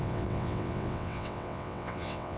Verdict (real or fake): fake